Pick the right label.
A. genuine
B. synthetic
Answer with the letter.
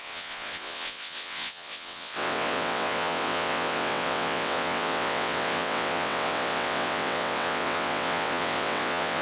B